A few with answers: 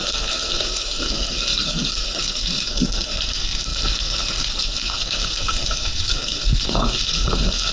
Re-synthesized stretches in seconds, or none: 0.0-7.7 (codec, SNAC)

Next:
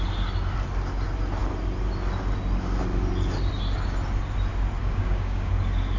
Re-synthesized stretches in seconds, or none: 4.8-5.5 (codec, DAC)

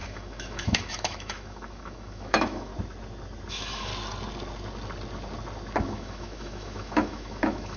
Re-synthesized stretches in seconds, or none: 0.0-2.7 (autoencoder, DAC-VAE); 3.5-3.9; 5.8-7.8

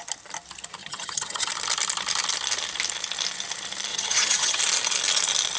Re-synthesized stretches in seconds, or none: 0.8-1.5 (vocoder, HiFi-GAN); 3.9-4.6

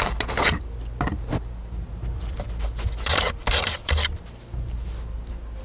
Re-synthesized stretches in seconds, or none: 3.4-5.6 (vocoder, BigVGAN v2)

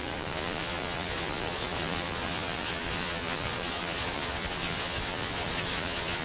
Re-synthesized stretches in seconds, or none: 0.0-6.2 (vocoder, Vocos)

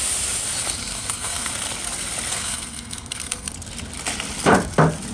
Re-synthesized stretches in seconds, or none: 0.8-1.5 (codec, SNAC); 2.3-3.5

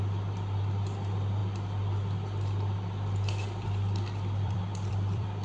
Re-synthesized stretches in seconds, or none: 0.0-5.4 (vocoder, BigVGAN v2)